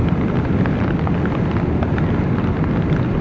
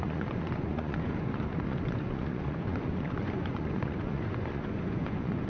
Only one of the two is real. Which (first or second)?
first